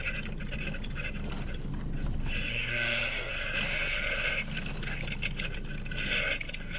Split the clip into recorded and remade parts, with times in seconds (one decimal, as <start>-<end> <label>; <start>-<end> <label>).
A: 0.0-2.5 recorded; 2.5-3.3 remade; 3.3-6.8 recorded